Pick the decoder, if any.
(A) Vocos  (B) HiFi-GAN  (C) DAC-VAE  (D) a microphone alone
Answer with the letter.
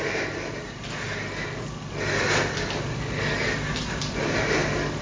D